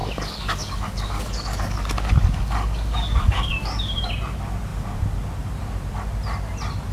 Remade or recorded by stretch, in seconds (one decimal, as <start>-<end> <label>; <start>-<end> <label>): 0.0-4.1 remade; 4.1-6.9 recorded